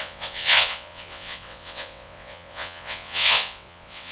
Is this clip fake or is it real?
fake